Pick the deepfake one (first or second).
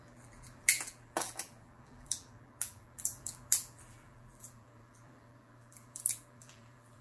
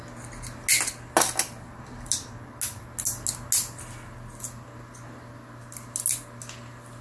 first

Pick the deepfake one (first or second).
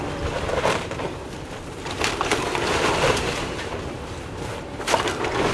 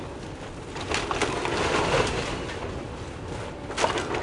first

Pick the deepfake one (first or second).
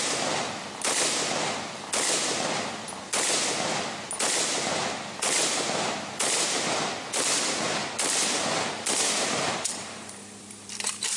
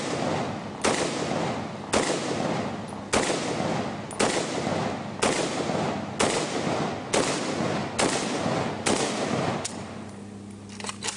first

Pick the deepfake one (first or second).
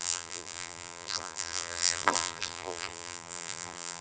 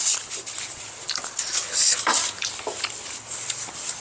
first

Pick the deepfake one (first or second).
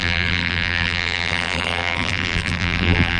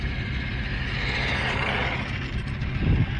first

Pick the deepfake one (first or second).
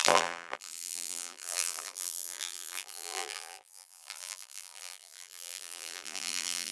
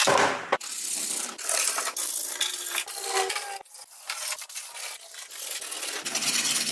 first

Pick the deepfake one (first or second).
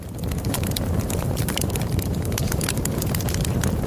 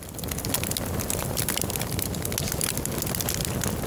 first